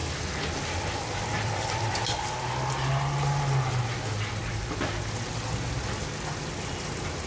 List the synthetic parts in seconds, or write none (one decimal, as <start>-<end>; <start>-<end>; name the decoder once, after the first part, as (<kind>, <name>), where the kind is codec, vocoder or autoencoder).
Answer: 0.0-2.9 (vocoder, BigVGAN v2); 4.4-5.0